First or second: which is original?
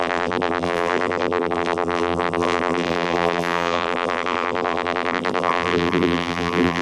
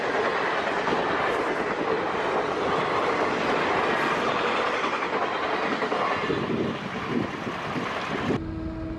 second